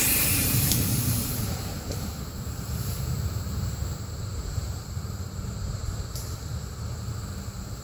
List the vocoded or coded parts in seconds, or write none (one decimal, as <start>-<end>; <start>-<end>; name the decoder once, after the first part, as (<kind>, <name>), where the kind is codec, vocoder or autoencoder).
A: 0.0-7.8 (vocoder, BigVGAN v2)

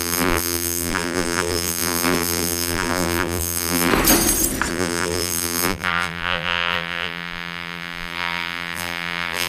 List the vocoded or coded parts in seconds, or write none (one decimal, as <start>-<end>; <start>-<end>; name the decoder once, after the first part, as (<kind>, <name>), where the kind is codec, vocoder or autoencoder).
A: 0.0-3.9 (vocoder, BigVGAN v2); 4.7-9.5

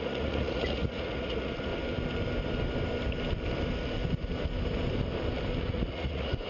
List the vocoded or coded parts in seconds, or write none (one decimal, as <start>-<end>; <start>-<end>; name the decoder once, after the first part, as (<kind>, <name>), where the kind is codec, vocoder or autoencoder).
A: 0.0-1.7 (vocoder, Vocos); 5.6-6.5

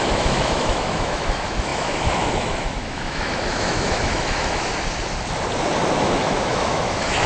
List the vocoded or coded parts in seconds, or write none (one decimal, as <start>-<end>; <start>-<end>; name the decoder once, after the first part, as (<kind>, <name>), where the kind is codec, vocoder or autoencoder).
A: 0.0-4.7 (autoencoder, DAC-VAE); 6.0-7.3

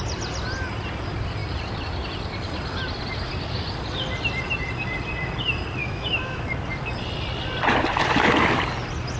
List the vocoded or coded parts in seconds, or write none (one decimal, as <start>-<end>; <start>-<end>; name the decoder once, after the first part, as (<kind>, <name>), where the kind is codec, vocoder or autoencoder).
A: 5.8-6.4 (autoencoder, DAC-VAE)

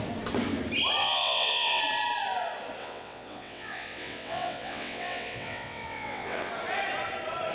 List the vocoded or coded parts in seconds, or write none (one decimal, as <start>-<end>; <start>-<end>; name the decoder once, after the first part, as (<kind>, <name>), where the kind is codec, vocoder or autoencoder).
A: 1.0-1.8 (vocoder, WaveNeXt); 2.8-6.5